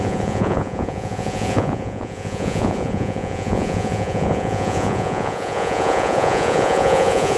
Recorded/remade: remade